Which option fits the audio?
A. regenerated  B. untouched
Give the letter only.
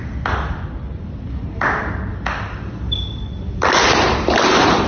B